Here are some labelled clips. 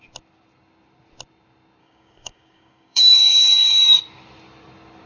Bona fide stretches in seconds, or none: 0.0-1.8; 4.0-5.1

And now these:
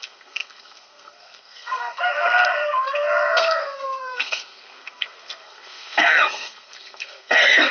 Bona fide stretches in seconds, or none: none

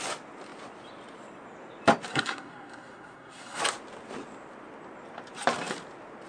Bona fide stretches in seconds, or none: 0.0-2.1; 3.6-6.3

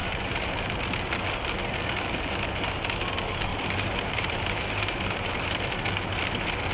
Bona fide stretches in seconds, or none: 0.6-3.5; 6.2-6.7

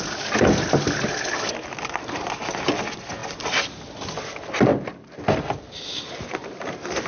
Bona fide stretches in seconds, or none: 0.0-3.2; 4.3-4.7; 5.2-7.1

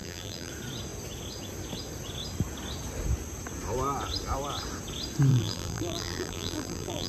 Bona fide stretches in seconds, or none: 0.5-5.3

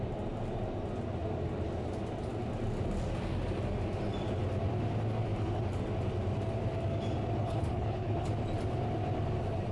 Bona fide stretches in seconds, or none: 0.0-7.4; 8.3-9.7

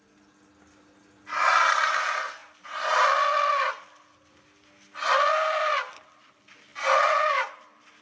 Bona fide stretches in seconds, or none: 0.0-8.0